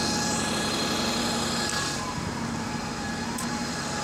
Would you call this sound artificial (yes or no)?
no